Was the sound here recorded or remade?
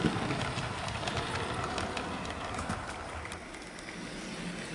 recorded